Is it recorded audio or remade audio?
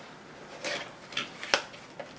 recorded